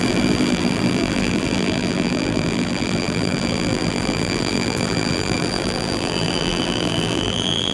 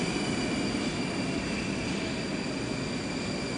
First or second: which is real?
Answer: second